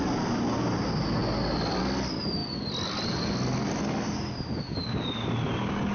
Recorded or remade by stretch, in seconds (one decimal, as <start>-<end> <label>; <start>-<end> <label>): 0.0-5.9 recorded